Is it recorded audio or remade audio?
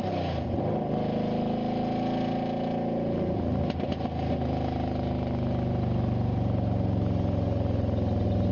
recorded